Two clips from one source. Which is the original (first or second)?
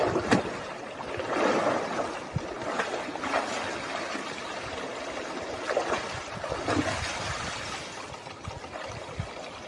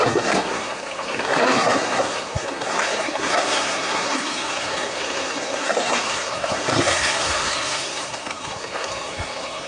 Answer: first